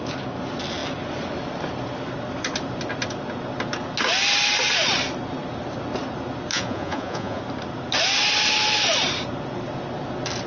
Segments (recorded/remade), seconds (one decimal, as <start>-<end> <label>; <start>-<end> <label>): 0.0-6.5 recorded; 6.5-7.4 remade; 7.4-10.5 recorded